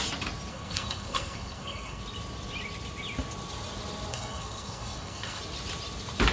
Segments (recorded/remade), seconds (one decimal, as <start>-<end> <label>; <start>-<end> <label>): 0.0-0.5 recorded; 0.5-2.0 remade; 2.0-4.1 recorded; 4.1-5.4 remade; 5.4-6.3 recorded